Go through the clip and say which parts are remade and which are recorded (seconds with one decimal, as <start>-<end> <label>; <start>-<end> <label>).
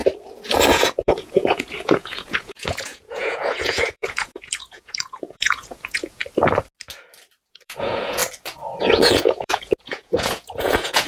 0.0-0.7 recorded; 0.7-6.2 remade; 6.2-7.5 recorded; 7.5-8.2 remade; 8.2-8.8 recorded; 8.8-11.1 remade